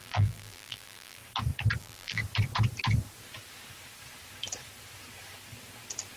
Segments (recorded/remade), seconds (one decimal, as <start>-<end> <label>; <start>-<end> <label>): 0.0-1.2 remade; 1.2-1.8 recorded; 1.8-2.2 remade; 2.2-6.2 recorded